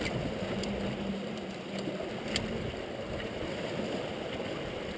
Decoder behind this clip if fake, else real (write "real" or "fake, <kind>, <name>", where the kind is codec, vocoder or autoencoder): real